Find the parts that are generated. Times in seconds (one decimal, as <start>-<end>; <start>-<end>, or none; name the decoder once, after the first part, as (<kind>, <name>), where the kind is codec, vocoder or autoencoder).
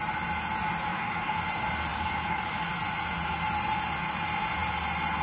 0.9-1.4 (codec, DAC); 1.9-2.7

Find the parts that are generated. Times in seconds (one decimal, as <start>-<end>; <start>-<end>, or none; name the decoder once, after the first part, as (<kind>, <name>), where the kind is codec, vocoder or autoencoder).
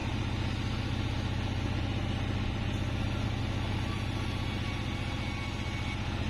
none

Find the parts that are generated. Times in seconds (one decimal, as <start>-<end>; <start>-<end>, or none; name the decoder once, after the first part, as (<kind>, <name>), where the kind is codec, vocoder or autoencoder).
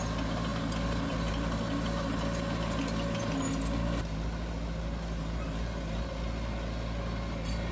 none